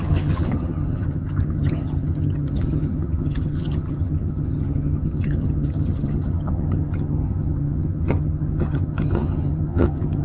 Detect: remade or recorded remade